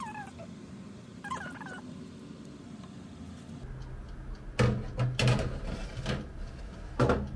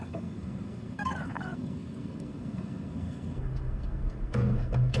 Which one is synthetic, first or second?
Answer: second